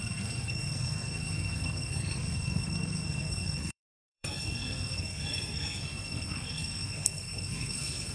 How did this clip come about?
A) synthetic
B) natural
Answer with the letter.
A